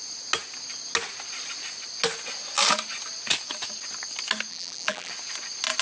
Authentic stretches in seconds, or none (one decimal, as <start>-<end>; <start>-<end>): 0.0-4.5; 5.1-5.8